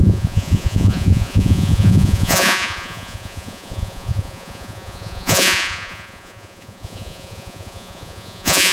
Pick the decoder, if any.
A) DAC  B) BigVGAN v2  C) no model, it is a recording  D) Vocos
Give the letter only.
D